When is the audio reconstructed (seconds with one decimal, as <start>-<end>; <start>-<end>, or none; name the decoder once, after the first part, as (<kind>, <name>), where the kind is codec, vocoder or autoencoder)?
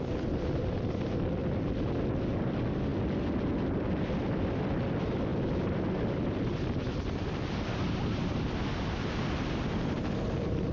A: 0.0-1.4 (vocoder, BigVGAN v2); 2.4-2.9; 3.7-5.3; 10.0-10.7